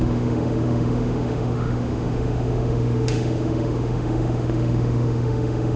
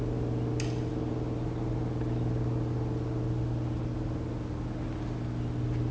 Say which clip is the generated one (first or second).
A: first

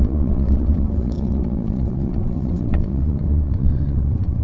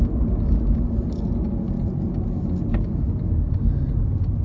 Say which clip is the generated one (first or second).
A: first